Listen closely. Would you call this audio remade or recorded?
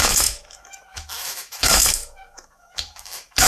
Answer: remade